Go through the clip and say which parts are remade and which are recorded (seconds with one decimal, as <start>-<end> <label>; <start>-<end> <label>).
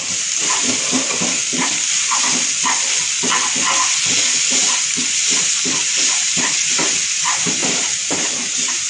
0.0-1.4 remade; 1.4-5.2 recorded; 5.2-8.9 remade